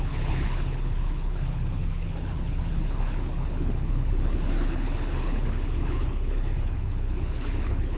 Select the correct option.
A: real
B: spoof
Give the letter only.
B